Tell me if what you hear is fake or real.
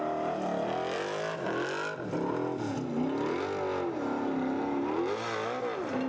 real